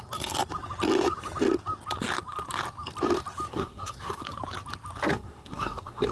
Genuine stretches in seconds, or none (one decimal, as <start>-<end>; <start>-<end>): 0.0-3.5; 4.2-5.1